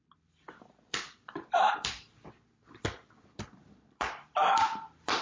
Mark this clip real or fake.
fake